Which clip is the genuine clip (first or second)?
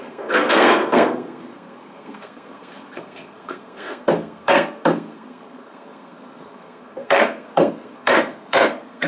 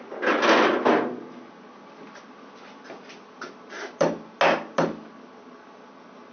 second